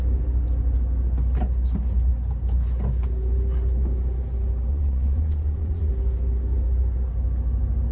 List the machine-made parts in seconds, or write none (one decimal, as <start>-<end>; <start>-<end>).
4.7-5.9